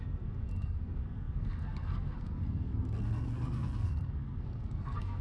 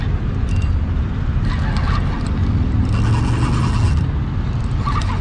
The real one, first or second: second